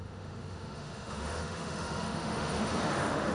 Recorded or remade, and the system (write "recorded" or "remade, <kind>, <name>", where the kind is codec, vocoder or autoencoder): remade, autoencoder, DAC-VAE